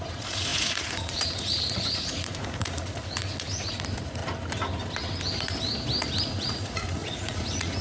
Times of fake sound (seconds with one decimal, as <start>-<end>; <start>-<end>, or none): 0.0-4.2; 6.2-7.8